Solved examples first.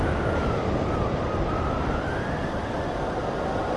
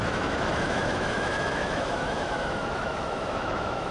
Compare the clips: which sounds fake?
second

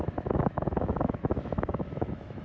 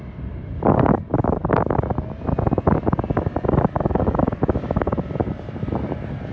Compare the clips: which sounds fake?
first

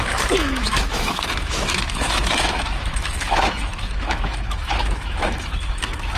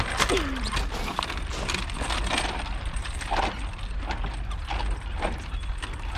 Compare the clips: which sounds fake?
first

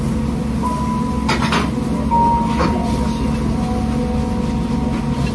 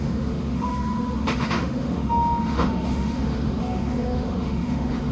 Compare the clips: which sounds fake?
second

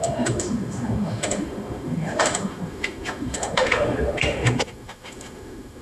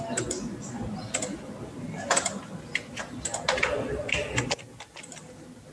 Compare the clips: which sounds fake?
first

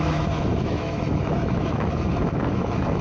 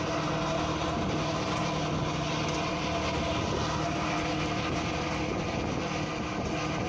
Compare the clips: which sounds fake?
first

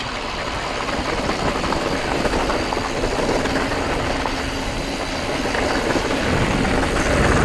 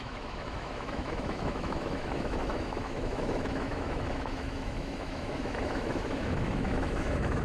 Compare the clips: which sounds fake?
second